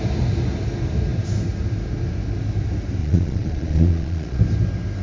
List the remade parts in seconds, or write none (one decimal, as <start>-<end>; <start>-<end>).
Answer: 3.0-4.4